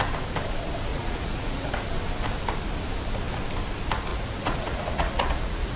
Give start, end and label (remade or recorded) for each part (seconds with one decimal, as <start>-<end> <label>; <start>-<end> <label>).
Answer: 0.0-0.9 recorded; 0.9-1.7 remade; 1.7-4.1 recorded; 4.1-5.8 remade